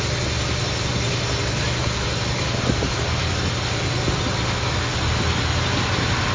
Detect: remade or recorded recorded